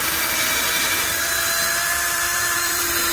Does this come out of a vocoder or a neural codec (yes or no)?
yes